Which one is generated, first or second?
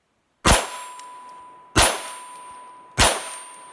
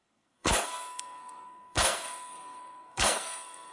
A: second